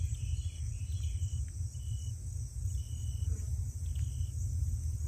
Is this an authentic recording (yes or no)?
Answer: yes